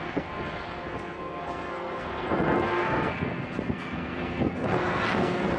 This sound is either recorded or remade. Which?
remade